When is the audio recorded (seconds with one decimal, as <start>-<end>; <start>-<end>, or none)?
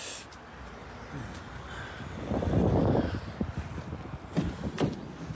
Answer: 0.0-5.3